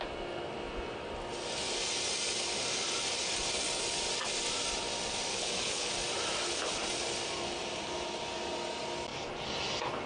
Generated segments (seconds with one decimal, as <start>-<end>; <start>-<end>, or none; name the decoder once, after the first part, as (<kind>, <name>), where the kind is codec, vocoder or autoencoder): 5.3-5.9 (codec, HILCodec)